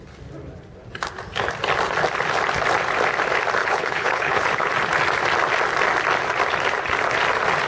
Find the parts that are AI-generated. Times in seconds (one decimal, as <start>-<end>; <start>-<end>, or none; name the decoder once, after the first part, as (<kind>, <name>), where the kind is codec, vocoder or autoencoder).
3.6-4.7 (codec, HILCodec)